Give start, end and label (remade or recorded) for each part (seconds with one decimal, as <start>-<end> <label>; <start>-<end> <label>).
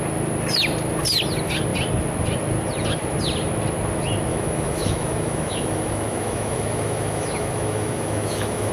0.0-4.3 recorded; 4.3-8.7 remade